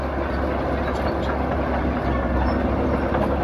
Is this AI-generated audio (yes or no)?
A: no